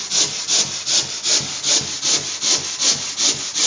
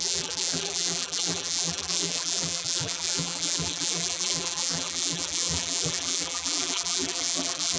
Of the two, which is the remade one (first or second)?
second